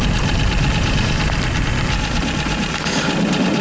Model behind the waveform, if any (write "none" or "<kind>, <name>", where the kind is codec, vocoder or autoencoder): none